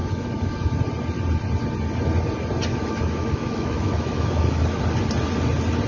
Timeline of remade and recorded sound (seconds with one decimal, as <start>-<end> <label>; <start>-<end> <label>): 0.0-0.8 remade; 0.8-2.7 recorded; 2.7-4.8 remade; 4.8-5.9 recorded